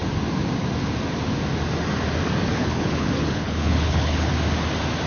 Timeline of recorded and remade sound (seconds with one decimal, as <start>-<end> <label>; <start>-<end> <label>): 0.0-2.5 recorded; 2.5-4.3 remade; 4.3-5.1 recorded